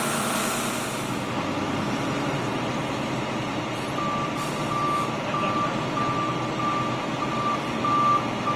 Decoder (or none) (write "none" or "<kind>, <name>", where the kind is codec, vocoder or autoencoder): none